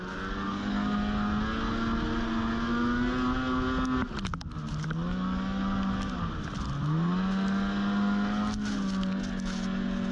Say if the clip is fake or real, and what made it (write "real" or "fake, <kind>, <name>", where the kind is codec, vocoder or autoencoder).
real